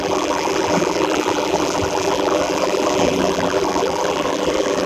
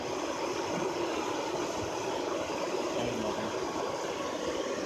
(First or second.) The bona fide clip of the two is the second